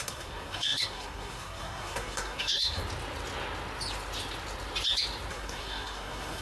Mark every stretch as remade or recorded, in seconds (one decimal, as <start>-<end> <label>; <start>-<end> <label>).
0.0-2.8 remade; 2.8-5.3 recorded; 5.3-6.4 remade